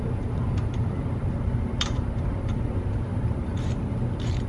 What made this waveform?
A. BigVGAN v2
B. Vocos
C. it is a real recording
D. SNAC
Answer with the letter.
A